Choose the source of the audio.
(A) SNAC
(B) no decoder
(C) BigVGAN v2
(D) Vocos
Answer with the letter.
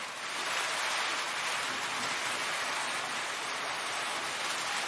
B